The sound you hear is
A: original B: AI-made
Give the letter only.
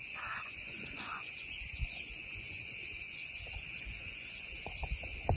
B